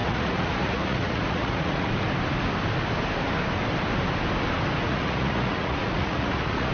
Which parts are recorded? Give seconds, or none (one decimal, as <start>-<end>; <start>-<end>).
1.9-4.8